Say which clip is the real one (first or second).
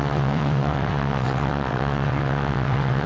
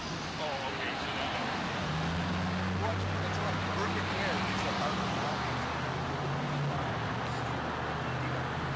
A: second